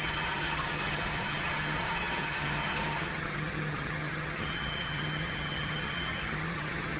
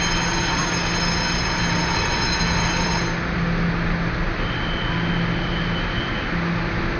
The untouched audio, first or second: second